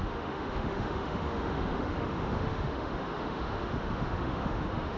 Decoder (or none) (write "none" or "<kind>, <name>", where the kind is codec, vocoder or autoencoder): autoencoder, DAC-VAE